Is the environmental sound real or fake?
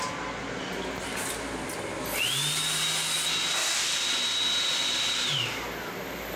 real